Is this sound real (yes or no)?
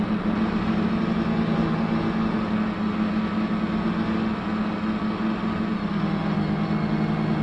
yes